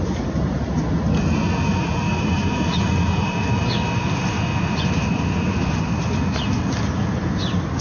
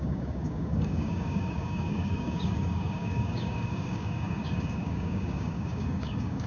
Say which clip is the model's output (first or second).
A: second